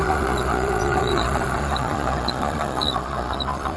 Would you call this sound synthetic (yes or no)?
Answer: yes